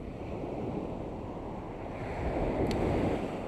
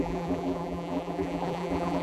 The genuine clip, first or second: first